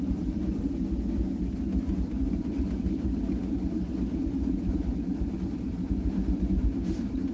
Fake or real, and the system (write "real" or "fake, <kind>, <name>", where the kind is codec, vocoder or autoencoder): real